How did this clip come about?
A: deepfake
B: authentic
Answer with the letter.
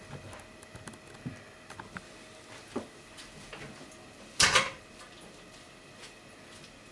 B